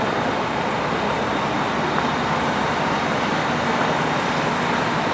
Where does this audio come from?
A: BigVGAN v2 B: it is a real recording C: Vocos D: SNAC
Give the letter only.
B